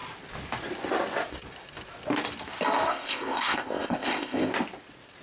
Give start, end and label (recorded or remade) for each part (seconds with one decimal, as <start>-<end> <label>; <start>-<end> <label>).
0.0-2.9 recorded; 2.9-4.5 remade; 4.5-5.2 recorded